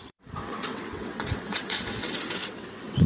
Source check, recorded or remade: remade